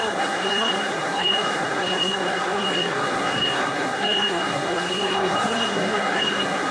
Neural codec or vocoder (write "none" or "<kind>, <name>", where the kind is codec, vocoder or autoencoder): codec, SNAC